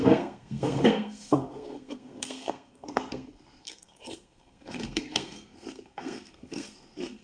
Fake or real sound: fake